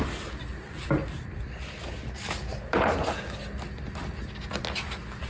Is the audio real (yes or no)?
yes